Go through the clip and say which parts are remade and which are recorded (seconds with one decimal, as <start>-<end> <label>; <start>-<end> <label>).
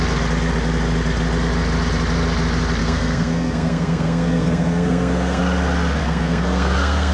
0.0-2.8 recorded; 2.8-5.4 remade; 5.4-6.0 recorded; 6.0-7.1 remade